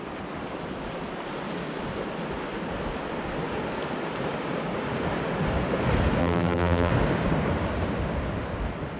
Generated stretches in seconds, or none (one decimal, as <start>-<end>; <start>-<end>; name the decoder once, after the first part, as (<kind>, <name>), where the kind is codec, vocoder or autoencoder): 6.2-6.9 (vocoder, BigVGAN v2)

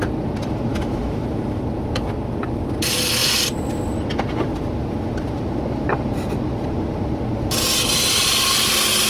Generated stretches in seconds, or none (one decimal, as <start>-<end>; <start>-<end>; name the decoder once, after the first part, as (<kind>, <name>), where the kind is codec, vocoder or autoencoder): 0.7-1.6 (autoencoder, DAC-VAE)

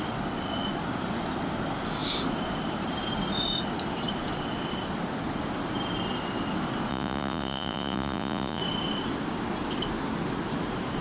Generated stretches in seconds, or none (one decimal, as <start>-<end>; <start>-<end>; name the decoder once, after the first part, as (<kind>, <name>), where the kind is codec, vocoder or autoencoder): 6.9-8.6 (vocoder, Vocos)

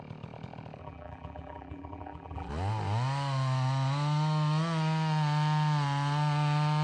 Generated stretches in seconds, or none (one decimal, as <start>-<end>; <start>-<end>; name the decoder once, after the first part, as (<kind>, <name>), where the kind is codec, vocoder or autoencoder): 0.8-2.5 (vocoder, BigVGAN v2)

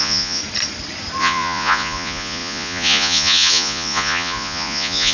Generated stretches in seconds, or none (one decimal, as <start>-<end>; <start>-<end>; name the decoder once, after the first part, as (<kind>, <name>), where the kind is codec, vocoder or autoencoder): 0.0-0.4 (vocoder, Vocos); 1.2-5.1

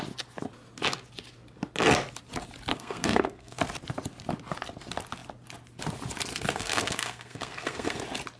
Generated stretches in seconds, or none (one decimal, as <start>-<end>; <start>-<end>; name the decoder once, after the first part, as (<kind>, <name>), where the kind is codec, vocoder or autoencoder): 2.7-3.6 (codec, SNAC); 6.3-8.0